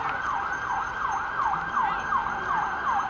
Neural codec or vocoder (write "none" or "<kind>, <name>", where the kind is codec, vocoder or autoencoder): none